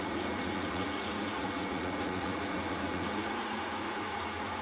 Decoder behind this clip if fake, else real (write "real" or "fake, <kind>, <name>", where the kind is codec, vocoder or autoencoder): fake, vocoder, Vocos